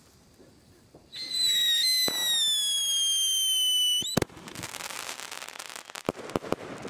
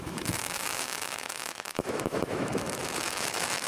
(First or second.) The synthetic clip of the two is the second